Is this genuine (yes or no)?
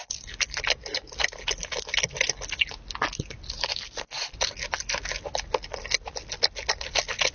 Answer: yes